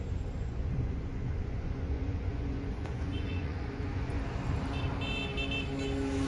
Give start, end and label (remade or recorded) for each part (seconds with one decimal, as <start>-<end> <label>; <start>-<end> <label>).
0.0-0.4 recorded; 0.4-4.2 remade; 4.2-6.3 recorded